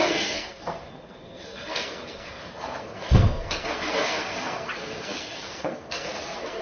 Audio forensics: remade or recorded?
remade